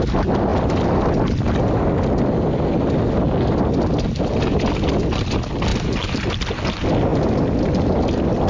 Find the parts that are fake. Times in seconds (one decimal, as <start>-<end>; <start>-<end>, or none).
none